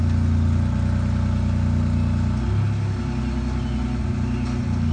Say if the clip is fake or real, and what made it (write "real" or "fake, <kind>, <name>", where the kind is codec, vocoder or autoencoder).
real